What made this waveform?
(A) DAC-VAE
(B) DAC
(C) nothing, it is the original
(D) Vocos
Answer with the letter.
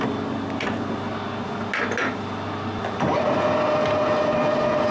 C